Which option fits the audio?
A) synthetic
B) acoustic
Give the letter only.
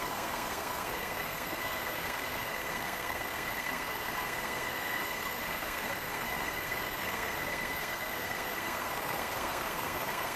A